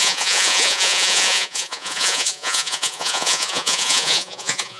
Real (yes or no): no